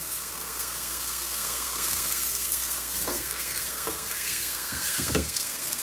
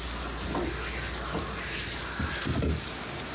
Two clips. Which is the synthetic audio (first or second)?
first